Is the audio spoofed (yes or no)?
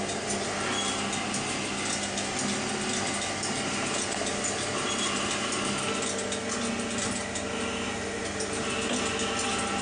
no